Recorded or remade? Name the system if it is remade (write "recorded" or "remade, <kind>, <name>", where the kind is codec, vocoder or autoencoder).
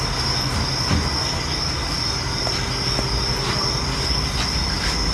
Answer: recorded